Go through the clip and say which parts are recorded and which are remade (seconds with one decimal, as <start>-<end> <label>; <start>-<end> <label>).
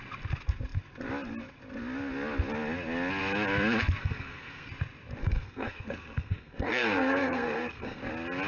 0.0-4.0 recorded; 4.0-4.7 remade; 4.7-5.2 recorded; 5.2-8.0 remade; 8.0-8.5 recorded